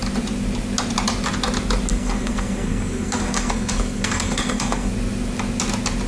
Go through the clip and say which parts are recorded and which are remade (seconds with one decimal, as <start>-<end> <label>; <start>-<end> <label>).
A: 0.0-1.9 recorded; 1.9-4.9 remade; 4.9-6.1 recorded